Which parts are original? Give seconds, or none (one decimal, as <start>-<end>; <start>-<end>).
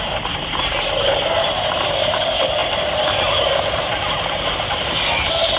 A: 0.0-5.6